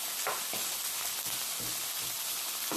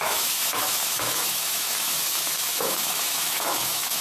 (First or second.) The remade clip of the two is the second